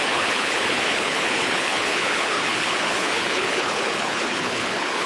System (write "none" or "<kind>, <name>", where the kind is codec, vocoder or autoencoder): codec, HILCodec